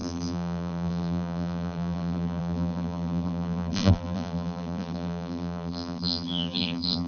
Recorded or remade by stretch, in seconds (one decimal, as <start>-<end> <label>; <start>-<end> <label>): 0.0-7.1 remade